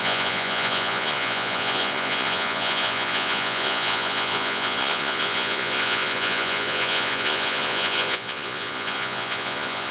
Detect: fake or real fake